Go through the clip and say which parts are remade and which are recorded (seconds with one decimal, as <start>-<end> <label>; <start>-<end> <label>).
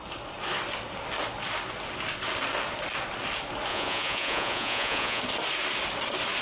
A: 0.0-3.7 recorded; 3.7-5.2 remade; 5.2-6.4 recorded